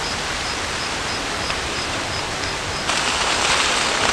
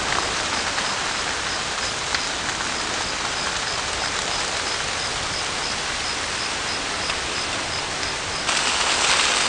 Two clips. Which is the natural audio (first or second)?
second